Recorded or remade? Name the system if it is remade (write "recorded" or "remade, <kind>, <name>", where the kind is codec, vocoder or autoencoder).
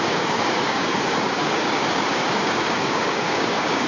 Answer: remade, codec, DAC